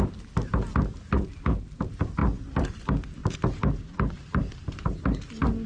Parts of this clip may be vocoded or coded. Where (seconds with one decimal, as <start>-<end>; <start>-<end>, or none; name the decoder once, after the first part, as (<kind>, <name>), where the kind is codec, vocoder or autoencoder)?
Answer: 0.7-1.3 (vocoder, BigVGAN v2); 2.2-2.8; 3.2-4.5